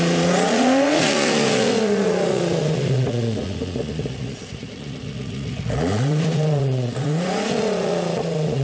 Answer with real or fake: fake